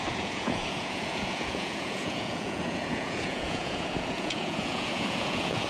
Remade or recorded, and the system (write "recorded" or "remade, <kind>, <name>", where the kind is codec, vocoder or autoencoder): remade, vocoder, Vocos